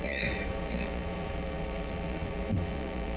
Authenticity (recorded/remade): remade